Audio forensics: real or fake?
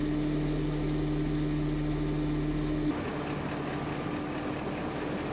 real